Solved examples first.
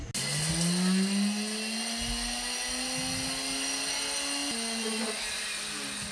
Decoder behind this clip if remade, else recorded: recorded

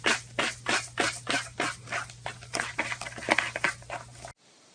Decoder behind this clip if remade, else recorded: recorded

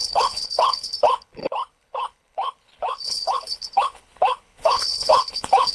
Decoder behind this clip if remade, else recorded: remade, codec, HILCodec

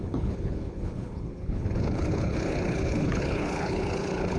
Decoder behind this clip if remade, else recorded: remade, codec, HILCodec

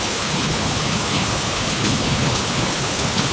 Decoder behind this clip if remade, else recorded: remade, codec, HILCodec